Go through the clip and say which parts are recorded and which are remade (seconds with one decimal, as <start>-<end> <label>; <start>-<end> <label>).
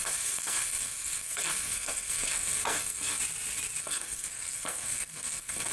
0.0-3.2 remade; 3.2-3.8 recorded; 3.8-5.7 remade